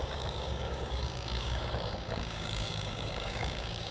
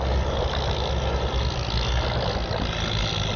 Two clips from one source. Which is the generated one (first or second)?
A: first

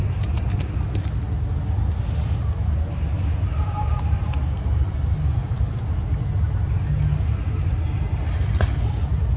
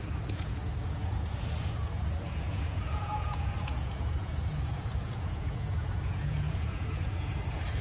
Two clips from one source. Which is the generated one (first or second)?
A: second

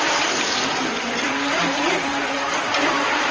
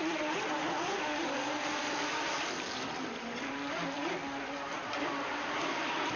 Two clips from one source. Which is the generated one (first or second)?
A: first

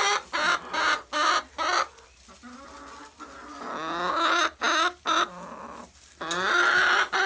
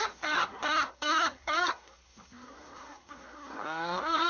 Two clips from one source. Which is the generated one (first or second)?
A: second